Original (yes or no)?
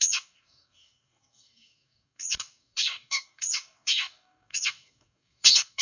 no